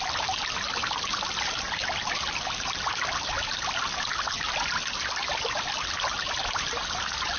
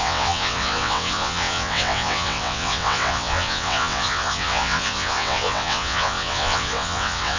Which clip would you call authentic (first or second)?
first